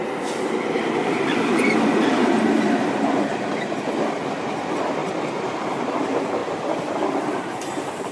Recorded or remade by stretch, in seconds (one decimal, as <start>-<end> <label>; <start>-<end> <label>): 0.0-5.0 remade; 5.0-5.6 recorded; 5.6-6.4 remade; 6.4-7.2 recorded; 7.2-8.1 remade